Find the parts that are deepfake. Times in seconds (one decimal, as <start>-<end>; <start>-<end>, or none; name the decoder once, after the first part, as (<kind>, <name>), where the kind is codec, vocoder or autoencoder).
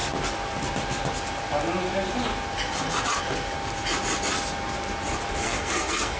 5.4-6.2 (codec, SNAC)